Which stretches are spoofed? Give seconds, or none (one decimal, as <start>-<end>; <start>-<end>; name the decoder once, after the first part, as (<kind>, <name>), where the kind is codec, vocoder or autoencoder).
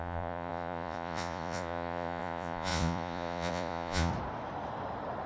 0.0-4.1 (vocoder, Vocos)